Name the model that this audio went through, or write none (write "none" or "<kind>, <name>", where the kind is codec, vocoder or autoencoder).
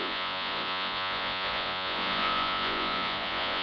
vocoder, Vocos